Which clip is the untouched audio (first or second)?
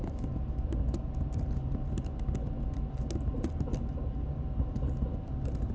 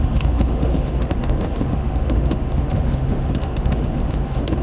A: first